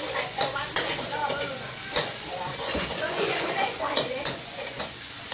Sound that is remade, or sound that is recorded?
remade